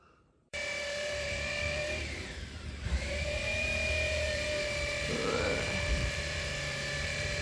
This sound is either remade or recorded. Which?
remade